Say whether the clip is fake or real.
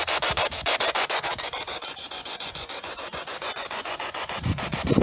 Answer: fake